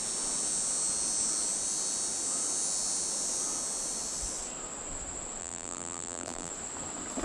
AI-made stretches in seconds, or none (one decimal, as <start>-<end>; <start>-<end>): 5.4-6.5